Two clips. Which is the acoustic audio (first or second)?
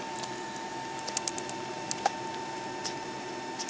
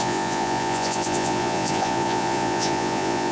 first